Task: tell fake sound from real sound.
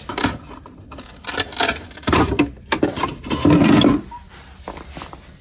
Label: real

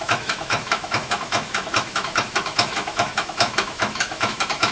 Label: fake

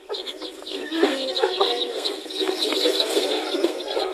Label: fake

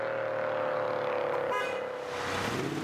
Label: real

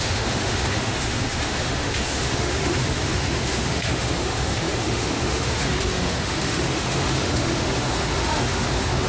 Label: fake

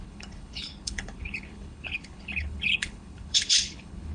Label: fake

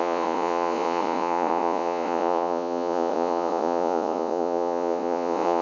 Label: fake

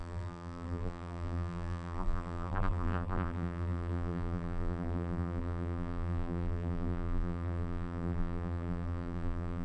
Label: fake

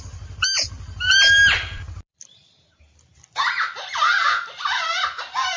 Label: real